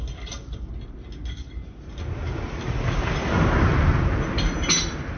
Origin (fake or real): real